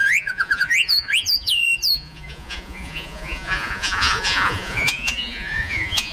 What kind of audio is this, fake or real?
fake